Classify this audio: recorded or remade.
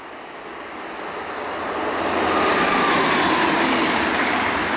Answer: recorded